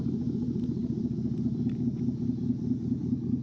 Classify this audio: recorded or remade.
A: recorded